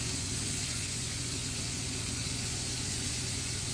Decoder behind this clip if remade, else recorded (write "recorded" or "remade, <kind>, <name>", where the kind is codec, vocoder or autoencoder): remade, vocoder, Vocos